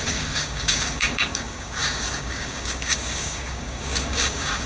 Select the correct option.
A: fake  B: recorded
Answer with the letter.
A